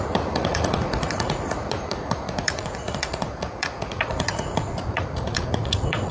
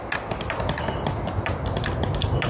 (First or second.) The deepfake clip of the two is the first